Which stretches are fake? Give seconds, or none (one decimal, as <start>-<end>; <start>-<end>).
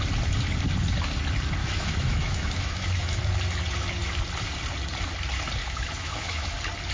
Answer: 1.6-3.2; 5.6-6.5